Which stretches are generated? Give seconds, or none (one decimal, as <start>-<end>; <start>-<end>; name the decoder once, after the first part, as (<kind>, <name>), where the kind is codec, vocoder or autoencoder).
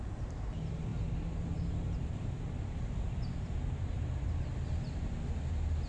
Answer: none